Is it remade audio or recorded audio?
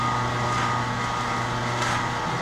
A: recorded